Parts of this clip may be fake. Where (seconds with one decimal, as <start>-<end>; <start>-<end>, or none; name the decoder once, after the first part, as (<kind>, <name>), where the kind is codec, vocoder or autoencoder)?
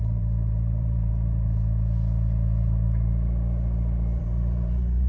0.0-1.1 (vocoder, BigVGAN v2); 4.2-5.1